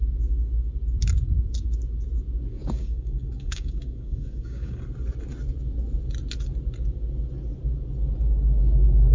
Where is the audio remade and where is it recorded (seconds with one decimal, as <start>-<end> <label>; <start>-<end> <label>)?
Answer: 0.0-2.5 recorded; 2.5-4.8 remade; 4.8-9.1 recorded